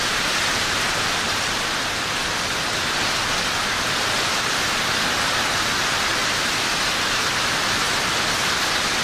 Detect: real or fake real